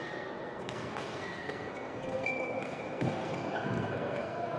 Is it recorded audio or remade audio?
remade